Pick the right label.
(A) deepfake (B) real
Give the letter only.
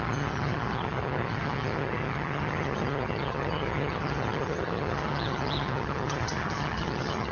A